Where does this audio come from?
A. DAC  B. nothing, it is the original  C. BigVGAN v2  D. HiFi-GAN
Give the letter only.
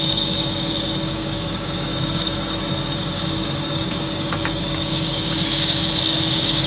A